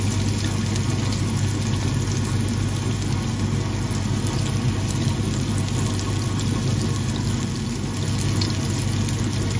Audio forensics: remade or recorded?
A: recorded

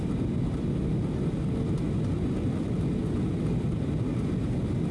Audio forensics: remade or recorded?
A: recorded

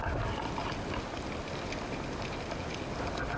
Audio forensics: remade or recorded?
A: recorded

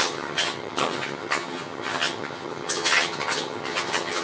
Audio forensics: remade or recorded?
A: remade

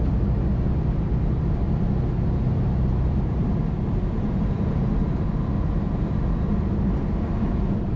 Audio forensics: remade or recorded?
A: recorded